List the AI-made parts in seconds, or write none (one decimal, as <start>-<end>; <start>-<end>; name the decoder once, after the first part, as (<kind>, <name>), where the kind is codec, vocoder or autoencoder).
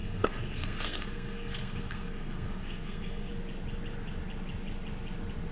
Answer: 0.0-3.3 (codec, SNAC)